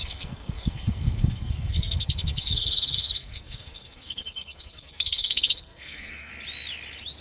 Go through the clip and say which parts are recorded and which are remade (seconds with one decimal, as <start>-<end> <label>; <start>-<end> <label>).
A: 0.0-6.3 remade; 6.3-7.2 recorded